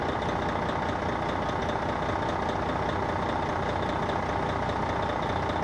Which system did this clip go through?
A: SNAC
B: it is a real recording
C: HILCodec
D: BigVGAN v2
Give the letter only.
B